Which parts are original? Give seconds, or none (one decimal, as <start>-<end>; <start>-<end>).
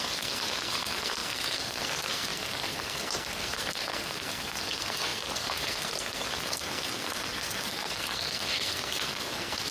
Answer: none